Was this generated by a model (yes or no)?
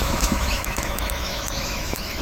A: yes